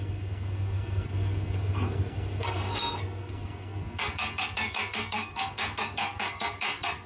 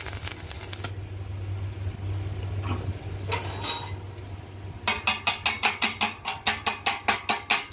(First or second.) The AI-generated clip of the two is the first